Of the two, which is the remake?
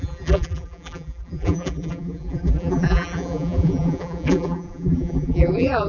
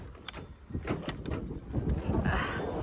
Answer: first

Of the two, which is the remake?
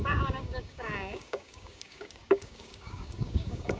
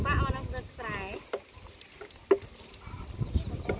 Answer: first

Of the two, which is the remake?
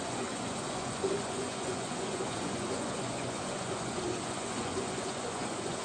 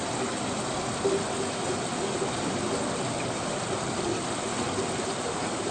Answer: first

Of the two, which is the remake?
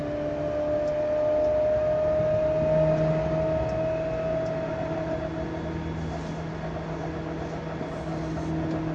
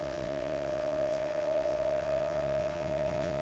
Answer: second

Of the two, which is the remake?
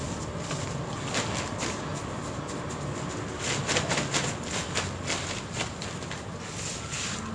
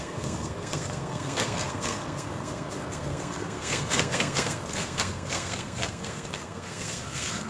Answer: second